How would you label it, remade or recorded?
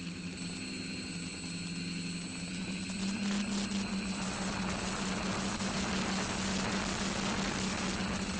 recorded